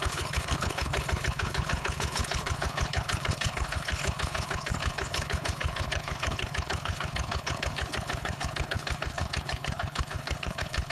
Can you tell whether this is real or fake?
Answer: fake